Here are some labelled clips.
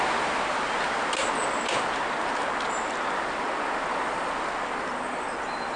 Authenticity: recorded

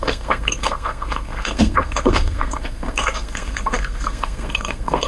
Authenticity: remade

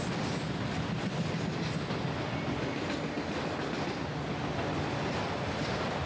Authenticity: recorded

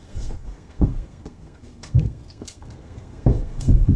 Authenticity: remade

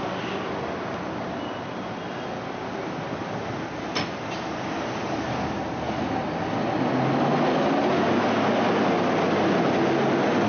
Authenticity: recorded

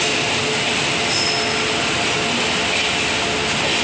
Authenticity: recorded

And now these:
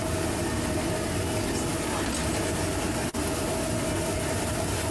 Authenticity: recorded